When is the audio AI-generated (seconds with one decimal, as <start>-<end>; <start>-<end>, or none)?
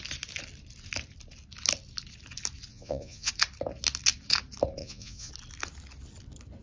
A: 2.7-3.3; 4.8-5.3